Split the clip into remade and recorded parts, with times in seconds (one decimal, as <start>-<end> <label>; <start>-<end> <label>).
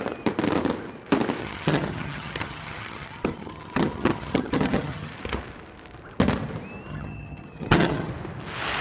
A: 0.0-1.4 recorded; 1.4-5.1 remade; 5.1-6.9 recorded; 6.9-8.1 remade; 8.1-8.8 recorded